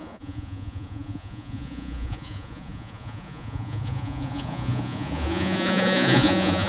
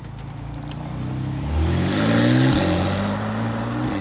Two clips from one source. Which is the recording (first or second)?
second